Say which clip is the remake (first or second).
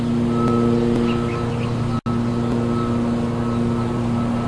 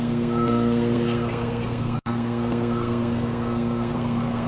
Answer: second